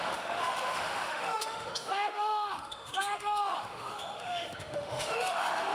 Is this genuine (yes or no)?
no